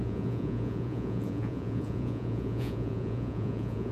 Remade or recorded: remade